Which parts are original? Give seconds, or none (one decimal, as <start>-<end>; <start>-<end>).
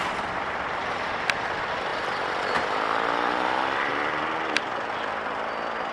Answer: none